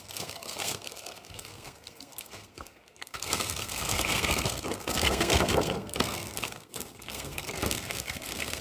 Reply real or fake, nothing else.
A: fake